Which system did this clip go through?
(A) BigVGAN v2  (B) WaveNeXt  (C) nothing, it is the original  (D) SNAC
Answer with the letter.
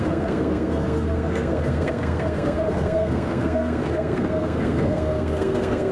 D